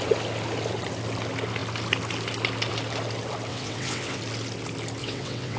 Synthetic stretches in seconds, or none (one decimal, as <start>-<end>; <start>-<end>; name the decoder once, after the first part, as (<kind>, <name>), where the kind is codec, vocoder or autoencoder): 3.5-4.2 (vocoder, WaveNeXt); 5.0-5.6